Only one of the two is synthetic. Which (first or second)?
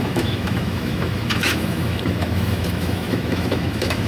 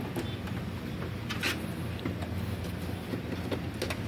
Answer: first